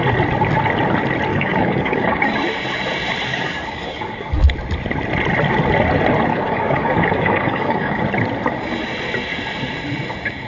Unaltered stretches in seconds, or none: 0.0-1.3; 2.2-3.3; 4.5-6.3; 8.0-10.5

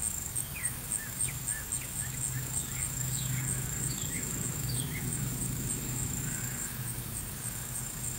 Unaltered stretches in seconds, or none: none

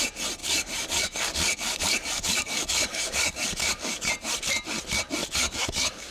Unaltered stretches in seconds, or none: 0.0-0.4; 4.1-5.2

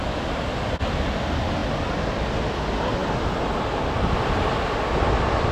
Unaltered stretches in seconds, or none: 0.0-5.5

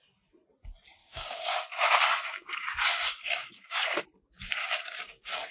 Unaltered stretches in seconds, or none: 0.0-1.0; 4.0-4.6

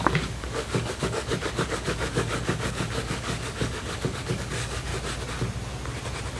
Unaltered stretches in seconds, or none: 4.9-6.4